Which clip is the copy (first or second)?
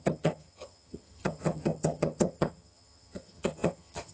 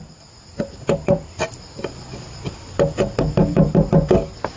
first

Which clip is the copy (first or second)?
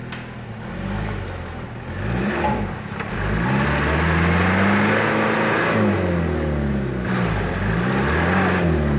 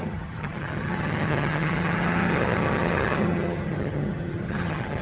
second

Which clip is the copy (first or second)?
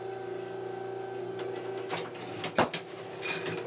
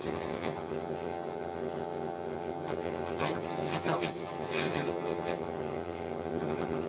second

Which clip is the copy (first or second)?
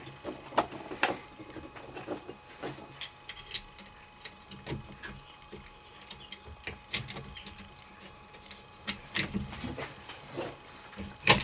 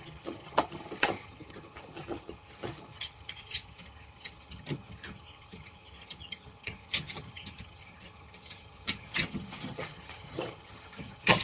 second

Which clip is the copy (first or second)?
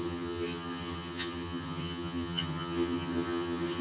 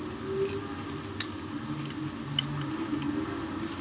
first